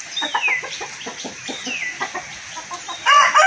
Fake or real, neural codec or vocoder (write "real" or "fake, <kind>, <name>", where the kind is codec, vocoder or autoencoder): real